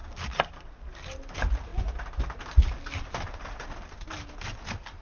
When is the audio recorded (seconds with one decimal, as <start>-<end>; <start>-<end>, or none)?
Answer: 0.0-5.0